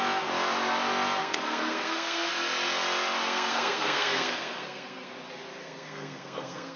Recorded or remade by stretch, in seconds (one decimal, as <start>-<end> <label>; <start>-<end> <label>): 0.0-1.2 recorded; 1.2-2.3 remade; 2.3-3.2 recorded; 3.2-5.1 remade; 5.1-5.6 recorded; 5.6-6.8 remade